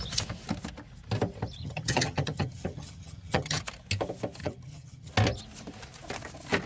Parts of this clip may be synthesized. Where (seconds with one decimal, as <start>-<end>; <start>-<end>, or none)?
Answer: 1.6-3.6; 4.4-5.1